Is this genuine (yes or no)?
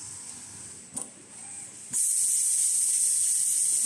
no